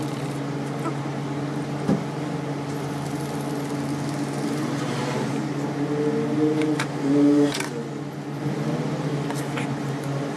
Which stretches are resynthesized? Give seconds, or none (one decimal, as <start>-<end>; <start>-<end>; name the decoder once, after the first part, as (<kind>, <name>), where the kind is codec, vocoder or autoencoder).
none